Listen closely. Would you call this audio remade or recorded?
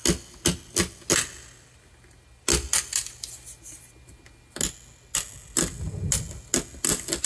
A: recorded